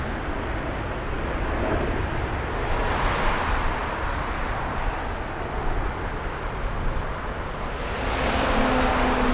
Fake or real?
real